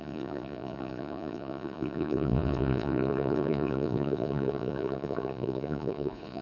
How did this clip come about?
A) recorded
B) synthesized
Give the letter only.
B